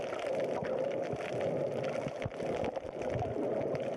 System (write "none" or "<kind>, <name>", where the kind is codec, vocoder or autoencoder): none